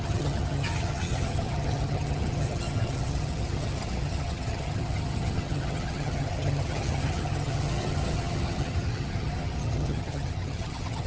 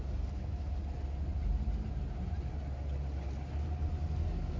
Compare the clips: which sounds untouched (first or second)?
second